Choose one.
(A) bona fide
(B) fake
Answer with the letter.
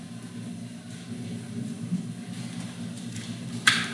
A